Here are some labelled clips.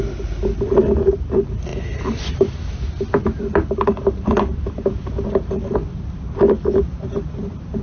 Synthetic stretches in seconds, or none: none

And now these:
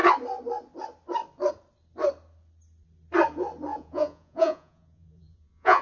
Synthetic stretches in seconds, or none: 3.7-5.8 (vocoder, Vocos)

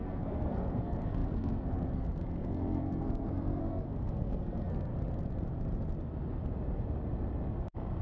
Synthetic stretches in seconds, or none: 0.0-4.9 (codec, SNAC)

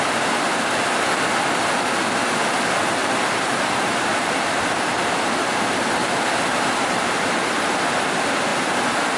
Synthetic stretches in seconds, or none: 3.0-5.4 (vocoder, BigVGAN v2); 6.0-7.4

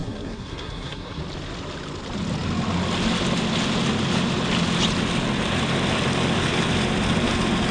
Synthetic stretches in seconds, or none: 0.0-1.2 (codec, SNAC)